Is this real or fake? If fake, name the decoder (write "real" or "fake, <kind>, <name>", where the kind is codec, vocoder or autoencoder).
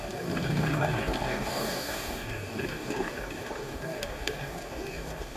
fake, codec, DAC